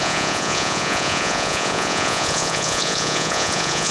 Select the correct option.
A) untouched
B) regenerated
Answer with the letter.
B